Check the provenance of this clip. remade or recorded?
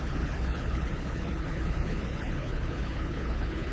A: remade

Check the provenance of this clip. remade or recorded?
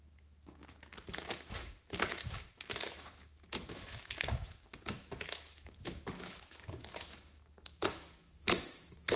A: remade